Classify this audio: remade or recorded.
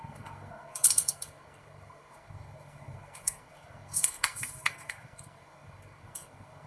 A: remade